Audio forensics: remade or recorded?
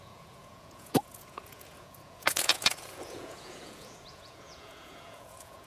remade